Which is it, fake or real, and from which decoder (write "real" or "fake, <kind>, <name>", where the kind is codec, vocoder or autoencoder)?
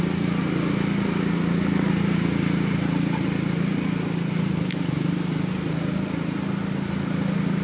real